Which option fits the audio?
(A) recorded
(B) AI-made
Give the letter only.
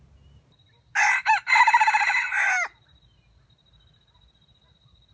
A